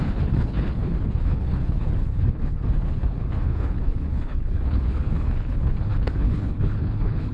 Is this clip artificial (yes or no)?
yes